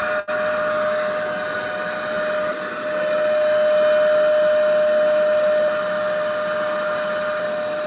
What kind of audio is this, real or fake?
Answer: real